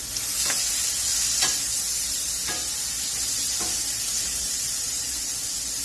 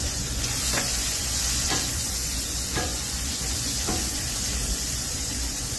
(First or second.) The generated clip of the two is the second